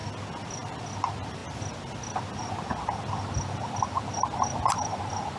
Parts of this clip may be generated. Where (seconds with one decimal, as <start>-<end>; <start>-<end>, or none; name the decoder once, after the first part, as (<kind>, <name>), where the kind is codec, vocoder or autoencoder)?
none